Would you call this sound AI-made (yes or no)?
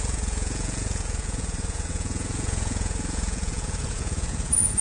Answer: yes